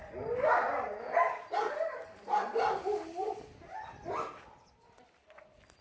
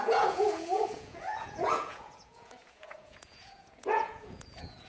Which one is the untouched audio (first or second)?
first